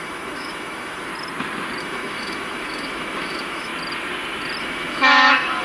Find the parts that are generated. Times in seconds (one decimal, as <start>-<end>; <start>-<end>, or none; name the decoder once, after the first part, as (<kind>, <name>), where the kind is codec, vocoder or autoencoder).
0.0-1.1 (autoencoder, DAC-VAE); 1.8-3.7; 4.6-5.6

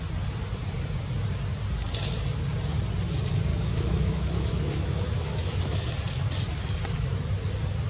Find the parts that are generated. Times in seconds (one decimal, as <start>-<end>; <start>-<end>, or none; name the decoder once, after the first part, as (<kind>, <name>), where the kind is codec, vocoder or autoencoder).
3.5-5.9 (autoencoder, DAC-VAE)

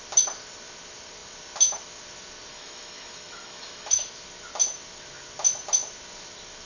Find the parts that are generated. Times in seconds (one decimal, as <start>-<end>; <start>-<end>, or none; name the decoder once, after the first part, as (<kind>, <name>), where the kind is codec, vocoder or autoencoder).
2.5-4.0 (autoencoder, DAC-VAE)

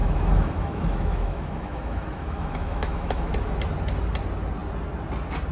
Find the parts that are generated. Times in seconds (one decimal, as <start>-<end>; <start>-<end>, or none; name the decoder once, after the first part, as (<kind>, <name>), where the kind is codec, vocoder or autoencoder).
0.0-3.3 (autoencoder, DAC-VAE)